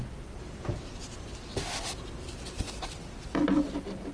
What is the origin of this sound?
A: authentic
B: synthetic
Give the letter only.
A